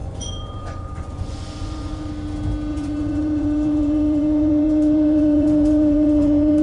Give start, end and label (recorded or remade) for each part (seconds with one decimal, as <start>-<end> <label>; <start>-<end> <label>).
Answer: 0.0-2.1 remade; 2.1-2.7 recorded; 2.7-6.6 remade